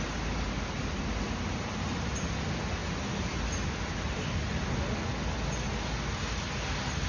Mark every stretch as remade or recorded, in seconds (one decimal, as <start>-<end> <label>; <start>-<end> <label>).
0.0-7.1 recorded